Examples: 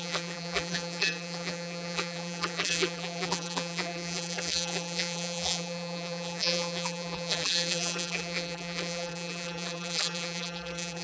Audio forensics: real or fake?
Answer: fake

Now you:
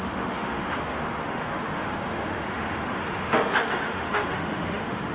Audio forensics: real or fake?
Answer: fake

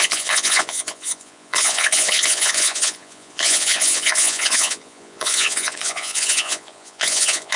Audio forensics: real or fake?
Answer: fake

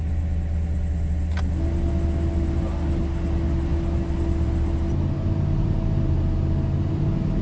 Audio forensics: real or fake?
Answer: real